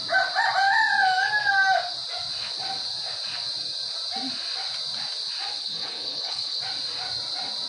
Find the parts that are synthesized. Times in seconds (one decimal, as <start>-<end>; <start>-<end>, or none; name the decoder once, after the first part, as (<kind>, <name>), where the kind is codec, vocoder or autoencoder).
5.6-6.6 (codec, HILCodec)